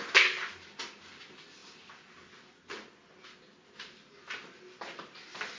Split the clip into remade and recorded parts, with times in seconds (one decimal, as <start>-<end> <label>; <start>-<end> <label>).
0.0-5.6 recorded